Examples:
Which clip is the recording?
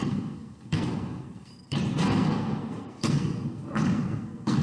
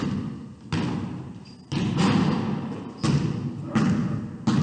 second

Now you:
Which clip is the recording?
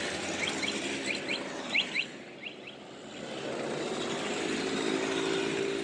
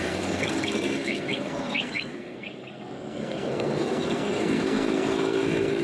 first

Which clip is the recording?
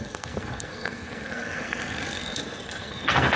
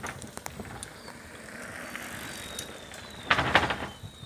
second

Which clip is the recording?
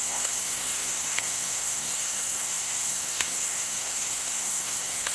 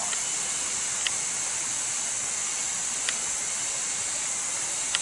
second